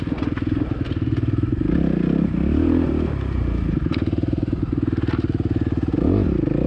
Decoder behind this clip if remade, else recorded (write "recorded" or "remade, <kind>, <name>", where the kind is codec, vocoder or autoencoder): recorded